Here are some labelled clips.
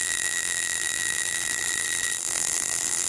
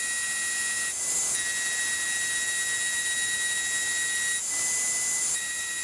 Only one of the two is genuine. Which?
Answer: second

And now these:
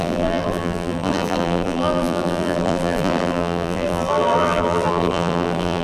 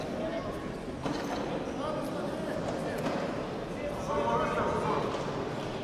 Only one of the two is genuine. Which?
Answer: second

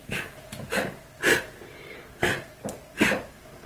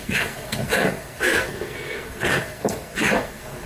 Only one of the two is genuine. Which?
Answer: first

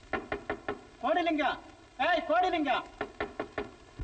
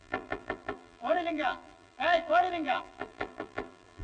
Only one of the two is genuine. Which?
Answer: first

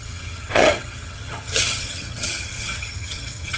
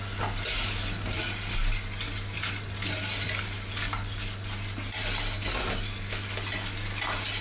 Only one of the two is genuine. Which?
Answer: second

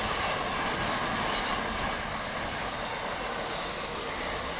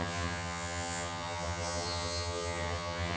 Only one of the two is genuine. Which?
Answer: first